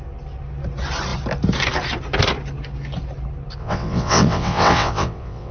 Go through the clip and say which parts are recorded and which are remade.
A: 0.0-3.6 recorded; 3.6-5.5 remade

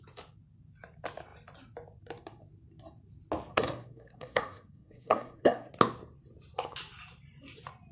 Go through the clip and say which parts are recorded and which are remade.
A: 0.0-3.5 recorded; 3.5-5.7 remade; 5.7-7.9 recorded

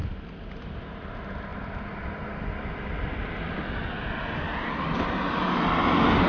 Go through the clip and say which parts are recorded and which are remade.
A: 0.0-6.3 recorded

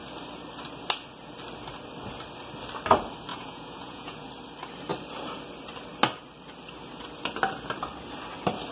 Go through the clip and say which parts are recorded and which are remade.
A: 0.0-3.3 recorded; 3.3-4.3 remade; 4.3-8.7 recorded

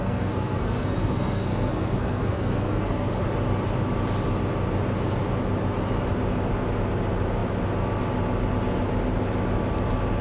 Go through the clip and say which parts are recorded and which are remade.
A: 0.0-3.2 remade; 3.2-10.2 recorded